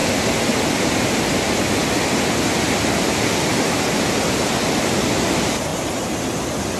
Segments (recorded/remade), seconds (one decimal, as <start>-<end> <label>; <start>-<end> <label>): 0.0-6.8 recorded